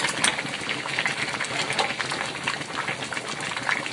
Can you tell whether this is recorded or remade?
recorded